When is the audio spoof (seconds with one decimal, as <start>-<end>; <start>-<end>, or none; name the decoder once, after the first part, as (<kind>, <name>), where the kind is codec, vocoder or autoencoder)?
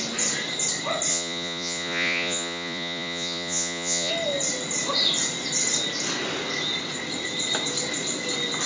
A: 1.1-4.1 (vocoder, Vocos)